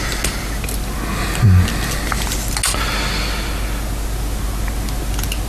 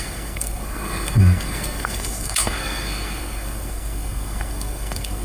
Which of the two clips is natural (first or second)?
first